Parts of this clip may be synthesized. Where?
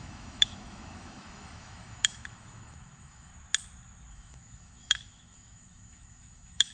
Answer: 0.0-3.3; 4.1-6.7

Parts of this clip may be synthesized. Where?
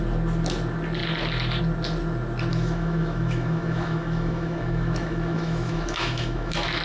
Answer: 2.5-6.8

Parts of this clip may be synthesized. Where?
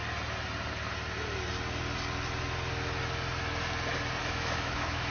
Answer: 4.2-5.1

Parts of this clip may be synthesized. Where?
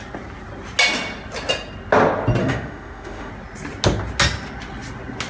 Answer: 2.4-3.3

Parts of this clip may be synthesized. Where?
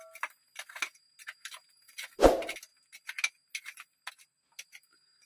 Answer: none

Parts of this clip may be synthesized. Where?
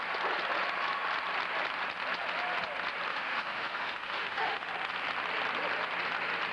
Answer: 3.1-4.7